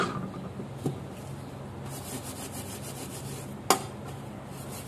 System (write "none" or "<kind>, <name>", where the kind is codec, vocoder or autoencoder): none